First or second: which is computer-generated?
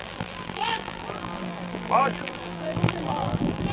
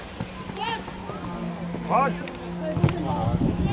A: first